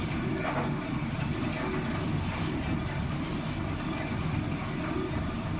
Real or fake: real